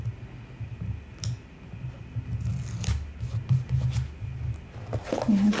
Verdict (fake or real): real